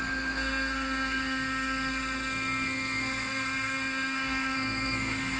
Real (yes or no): no